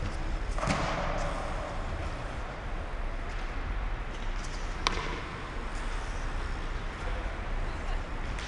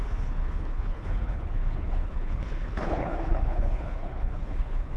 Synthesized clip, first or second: second